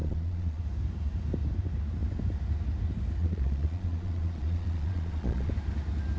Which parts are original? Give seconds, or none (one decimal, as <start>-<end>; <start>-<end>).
0.6-3.2; 5.5-6.2